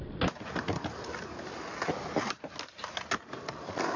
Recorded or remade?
recorded